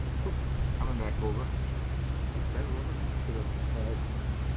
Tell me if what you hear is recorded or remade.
recorded